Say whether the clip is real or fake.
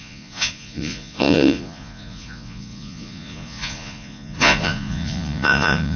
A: fake